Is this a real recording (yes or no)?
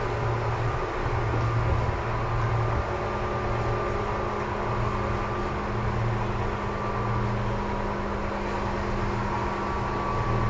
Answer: yes